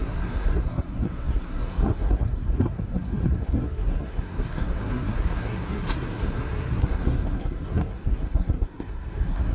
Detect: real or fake fake